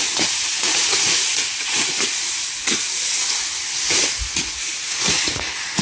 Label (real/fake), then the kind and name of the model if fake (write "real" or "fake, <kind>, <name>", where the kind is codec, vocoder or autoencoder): fake, vocoder, Vocos